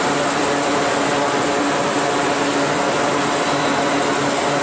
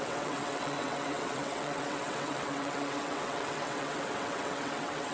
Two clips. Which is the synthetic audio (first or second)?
second